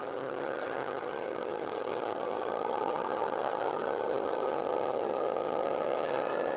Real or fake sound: fake